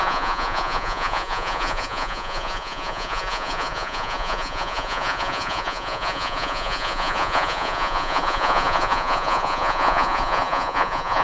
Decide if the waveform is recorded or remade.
remade